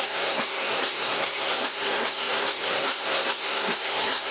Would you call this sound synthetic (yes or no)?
yes